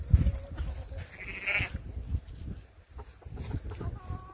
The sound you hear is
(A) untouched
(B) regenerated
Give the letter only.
A